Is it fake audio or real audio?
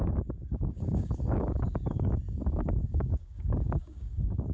fake